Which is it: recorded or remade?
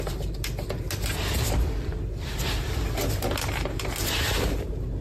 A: recorded